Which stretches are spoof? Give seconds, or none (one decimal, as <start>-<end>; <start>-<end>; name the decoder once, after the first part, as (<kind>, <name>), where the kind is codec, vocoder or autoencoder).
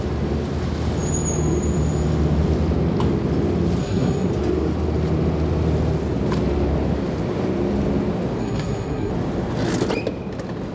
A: 3.8-4.3 (codec, SNAC); 8.4-9.1